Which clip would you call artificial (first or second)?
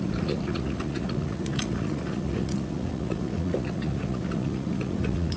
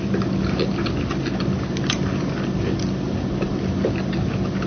first